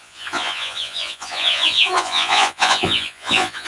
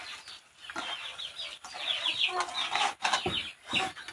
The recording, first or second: second